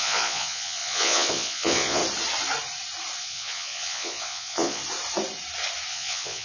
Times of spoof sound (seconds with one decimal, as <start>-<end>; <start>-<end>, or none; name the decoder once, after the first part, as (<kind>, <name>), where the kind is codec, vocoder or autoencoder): 0.0-2.0 (vocoder, Vocos); 3.2-4.8; 5.9-6.4